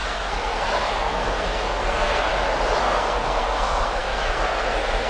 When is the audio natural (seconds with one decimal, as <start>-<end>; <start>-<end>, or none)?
2.3-2.8